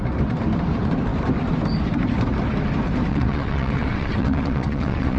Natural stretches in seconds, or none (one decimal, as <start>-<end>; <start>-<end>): 0.0-3.1